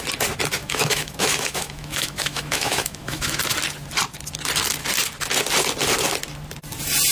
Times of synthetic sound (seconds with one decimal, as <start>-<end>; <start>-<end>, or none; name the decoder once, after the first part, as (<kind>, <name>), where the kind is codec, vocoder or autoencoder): 0.6-3.4 (autoencoder, DAC-VAE)